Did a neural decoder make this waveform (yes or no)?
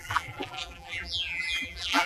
yes